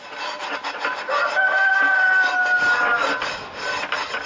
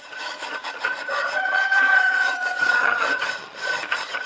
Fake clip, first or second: second